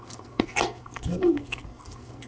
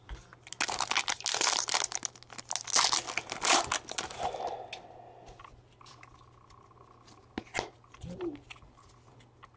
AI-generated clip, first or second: first